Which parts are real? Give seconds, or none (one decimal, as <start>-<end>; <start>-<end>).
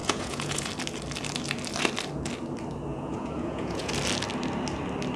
0.7-2.9; 3.9-5.2